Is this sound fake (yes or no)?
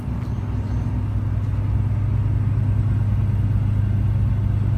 no